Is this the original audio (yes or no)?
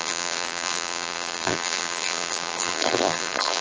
no